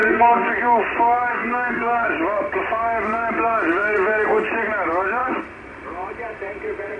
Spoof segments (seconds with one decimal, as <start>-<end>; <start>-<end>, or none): 0.0-0.5; 1.3-2.1